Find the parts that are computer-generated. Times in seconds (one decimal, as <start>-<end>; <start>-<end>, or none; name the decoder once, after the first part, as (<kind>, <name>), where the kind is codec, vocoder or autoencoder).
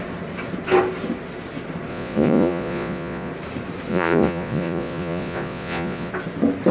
1.9-3.3 (vocoder, Vocos); 3.9-6.1